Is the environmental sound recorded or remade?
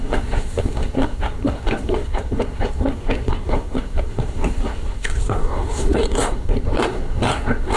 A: remade